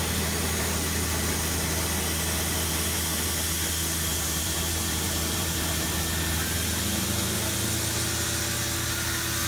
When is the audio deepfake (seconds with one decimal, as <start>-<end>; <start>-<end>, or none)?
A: 4.1-6.0